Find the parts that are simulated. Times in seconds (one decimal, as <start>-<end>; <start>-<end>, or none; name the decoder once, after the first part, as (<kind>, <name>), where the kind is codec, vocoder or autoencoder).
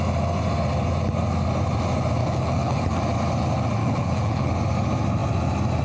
2.2-3.0 (codec, HILCodec); 3.8-4.5